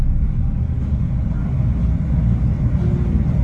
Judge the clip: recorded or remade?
recorded